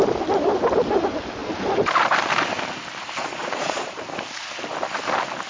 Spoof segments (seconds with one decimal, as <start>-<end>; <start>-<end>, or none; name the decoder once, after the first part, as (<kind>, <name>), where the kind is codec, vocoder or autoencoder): 3.2-4.0 (vocoder, Vocos)